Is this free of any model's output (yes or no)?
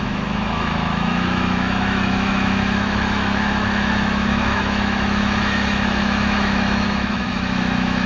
no